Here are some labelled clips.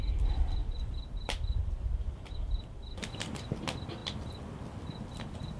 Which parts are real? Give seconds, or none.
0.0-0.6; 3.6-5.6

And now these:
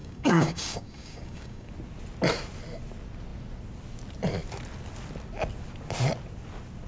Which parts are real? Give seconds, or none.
1.7-6.9